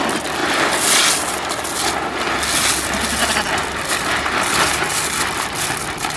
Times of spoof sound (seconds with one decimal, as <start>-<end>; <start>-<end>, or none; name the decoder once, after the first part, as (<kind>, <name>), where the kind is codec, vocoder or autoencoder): none